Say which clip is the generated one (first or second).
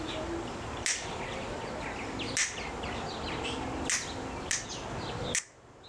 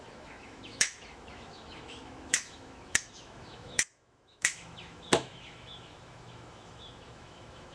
second